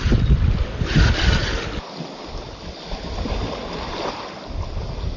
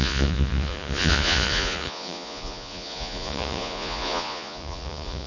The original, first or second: first